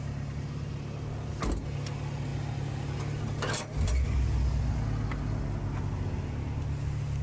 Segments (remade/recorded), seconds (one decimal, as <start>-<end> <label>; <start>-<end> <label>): 0.0-7.2 recorded